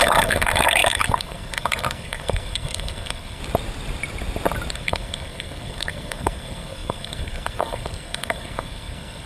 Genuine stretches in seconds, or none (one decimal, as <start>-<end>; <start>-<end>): 3.4-4.7